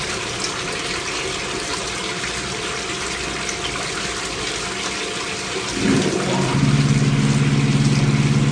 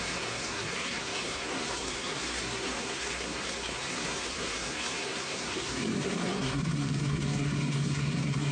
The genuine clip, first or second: first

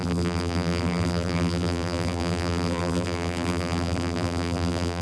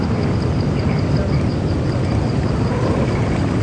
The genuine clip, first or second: second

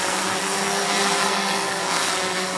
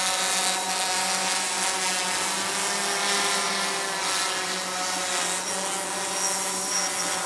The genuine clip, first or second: second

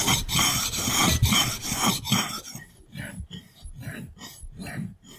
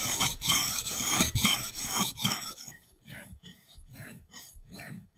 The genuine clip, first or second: first